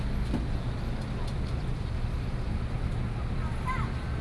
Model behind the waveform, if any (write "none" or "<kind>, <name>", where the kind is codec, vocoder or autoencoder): none